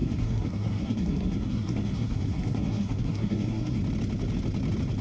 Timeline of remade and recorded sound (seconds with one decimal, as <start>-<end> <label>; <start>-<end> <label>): 0.0-3.8 remade; 3.8-5.0 recorded